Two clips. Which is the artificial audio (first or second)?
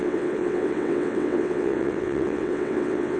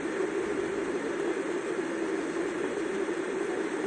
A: first